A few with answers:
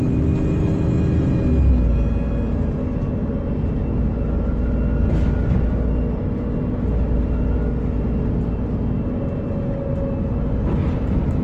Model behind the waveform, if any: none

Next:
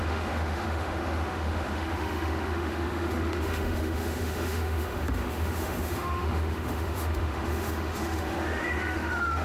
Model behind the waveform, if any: autoencoder, DAC-VAE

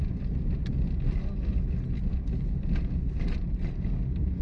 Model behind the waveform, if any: none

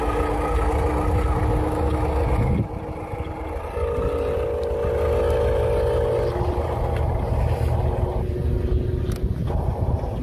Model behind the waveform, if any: none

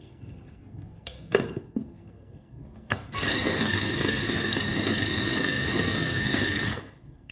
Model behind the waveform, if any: codec, SNAC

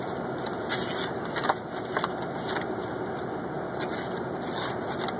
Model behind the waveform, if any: none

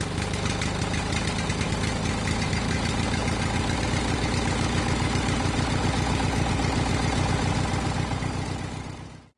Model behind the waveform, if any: none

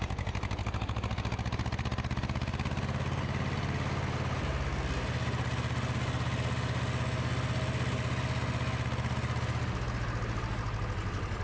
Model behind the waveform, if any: none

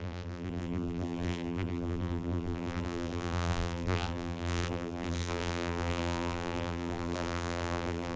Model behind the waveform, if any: vocoder, BigVGAN v2